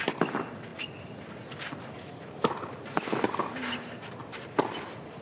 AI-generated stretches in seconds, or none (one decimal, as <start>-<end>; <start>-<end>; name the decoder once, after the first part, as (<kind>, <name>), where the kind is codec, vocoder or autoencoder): none